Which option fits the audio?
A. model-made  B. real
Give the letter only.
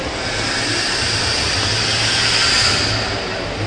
B